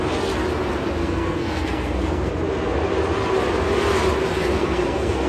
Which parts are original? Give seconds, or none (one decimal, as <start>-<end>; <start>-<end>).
0.0-1.0; 2.3-4.6

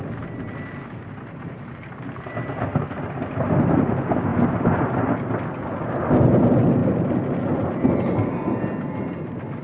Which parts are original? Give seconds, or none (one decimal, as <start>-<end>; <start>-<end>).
0.0-9.6

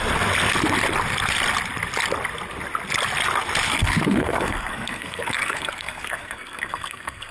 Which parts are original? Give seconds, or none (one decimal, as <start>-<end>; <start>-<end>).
0.0-3.7

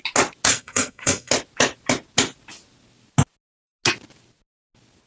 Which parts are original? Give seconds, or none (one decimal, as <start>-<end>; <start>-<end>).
0.0-0.5; 1.3-5.1

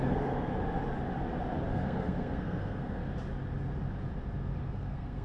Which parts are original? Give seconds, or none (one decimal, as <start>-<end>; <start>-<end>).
0.5-1.7; 3.0-4.6

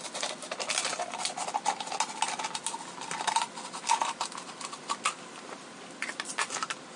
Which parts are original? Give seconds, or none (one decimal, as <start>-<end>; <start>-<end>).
0.0-7.0

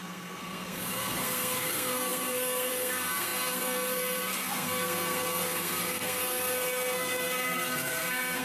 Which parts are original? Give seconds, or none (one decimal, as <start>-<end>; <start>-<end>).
none